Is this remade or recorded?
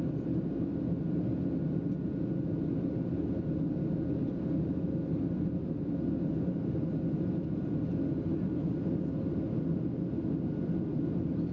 recorded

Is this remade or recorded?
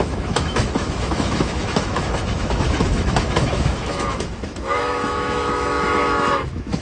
remade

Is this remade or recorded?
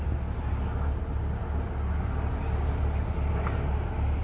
recorded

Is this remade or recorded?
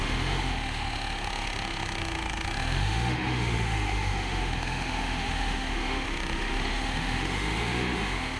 remade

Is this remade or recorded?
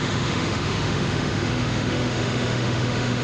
remade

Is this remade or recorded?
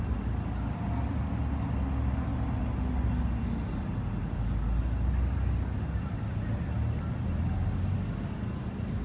recorded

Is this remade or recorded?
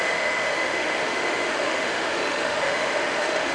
remade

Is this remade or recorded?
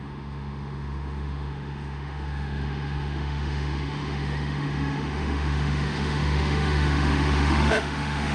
remade